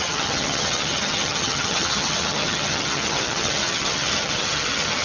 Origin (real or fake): fake